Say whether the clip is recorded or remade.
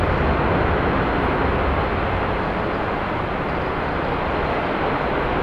recorded